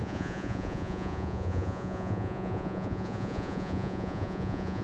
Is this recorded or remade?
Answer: remade